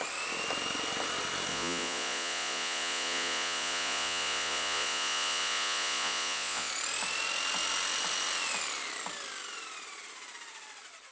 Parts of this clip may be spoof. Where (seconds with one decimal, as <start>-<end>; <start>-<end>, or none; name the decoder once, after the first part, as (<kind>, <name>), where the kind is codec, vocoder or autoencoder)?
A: 1.5-6.7 (vocoder, Vocos)